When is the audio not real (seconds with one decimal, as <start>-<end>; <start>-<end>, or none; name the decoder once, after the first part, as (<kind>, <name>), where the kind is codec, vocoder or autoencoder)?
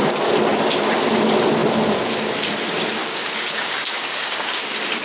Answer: 3.0-4.6 (codec, DAC)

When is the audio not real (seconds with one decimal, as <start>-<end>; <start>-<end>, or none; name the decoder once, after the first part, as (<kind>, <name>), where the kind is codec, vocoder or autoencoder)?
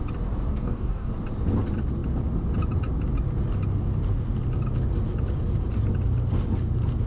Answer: 0.5-1.1 (codec, DAC)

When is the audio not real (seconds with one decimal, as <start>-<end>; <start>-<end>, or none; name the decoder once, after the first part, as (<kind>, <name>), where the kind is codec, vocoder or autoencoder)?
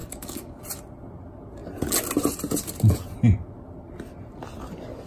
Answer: 0.0-0.6 (codec, DAC)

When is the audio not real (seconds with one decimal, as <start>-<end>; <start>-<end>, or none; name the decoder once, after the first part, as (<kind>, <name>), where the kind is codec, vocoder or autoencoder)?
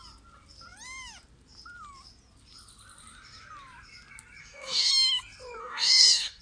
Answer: 4.4-4.9 (codec, DAC); 5.6-6.4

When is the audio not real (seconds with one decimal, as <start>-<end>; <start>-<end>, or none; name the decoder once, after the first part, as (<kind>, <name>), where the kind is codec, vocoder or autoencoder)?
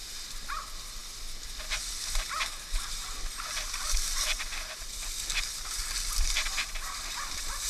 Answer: none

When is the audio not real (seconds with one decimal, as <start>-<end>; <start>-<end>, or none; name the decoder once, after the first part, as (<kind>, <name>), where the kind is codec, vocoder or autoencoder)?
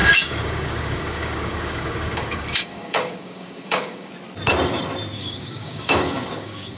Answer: 0.0-4.1 (codec, DAC); 5.2-6.8